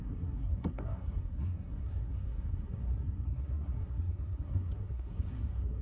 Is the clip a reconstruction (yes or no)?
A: yes